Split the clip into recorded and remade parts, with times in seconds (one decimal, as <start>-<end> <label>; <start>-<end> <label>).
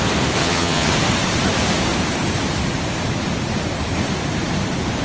0.0-0.4 recorded; 0.4-0.9 remade; 0.9-5.0 recorded